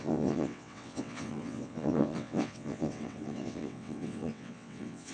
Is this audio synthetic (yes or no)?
yes